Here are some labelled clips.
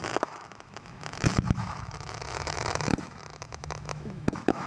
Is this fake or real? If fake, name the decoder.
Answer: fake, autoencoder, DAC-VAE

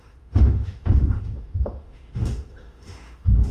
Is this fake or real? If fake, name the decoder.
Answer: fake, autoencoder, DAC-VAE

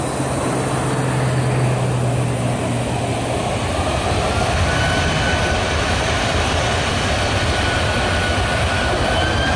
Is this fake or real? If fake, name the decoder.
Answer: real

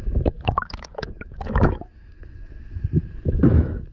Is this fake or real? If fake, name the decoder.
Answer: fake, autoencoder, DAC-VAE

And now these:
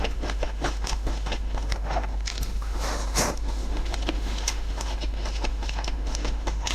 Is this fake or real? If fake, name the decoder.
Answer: fake, autoencoder, DAC-VAE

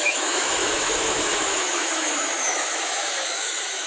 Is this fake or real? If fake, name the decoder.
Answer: fake, autoencoder, DAC-VAE